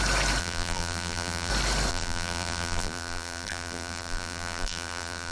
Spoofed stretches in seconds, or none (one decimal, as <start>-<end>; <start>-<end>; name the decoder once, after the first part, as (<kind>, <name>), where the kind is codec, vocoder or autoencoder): 0.4-1.5 (vocoder, BigVGAN v2); 1.9-5.3

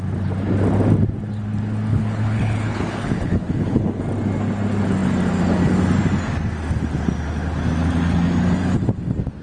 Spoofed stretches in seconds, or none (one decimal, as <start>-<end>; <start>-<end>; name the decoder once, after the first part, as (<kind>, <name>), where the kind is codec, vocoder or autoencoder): 1.9-4.0 (codec, HILCodec)